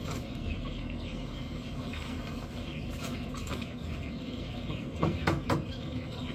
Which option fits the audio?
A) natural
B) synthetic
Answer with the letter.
B